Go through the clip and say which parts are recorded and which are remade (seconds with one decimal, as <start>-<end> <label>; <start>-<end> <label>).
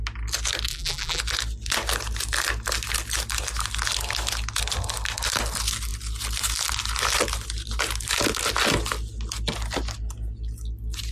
0.0-0.7 recorded; 0.7-1.2 remade; 1.2-11.1 recorded